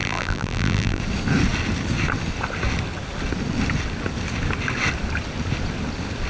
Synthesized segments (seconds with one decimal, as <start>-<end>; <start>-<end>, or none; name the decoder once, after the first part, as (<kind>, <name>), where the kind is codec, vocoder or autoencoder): 0.0-1.0 (vocoder, BigVGAN v2)